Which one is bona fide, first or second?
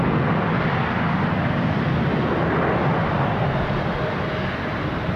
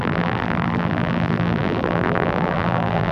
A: first